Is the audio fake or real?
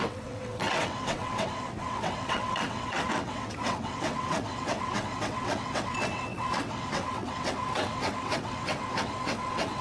fake